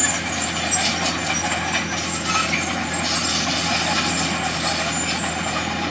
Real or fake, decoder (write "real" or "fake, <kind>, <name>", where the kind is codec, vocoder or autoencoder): real